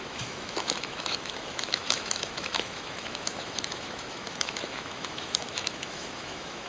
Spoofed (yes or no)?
yes